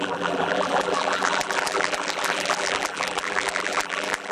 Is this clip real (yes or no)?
no